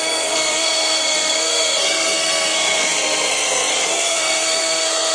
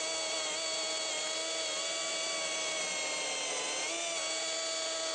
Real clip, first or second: second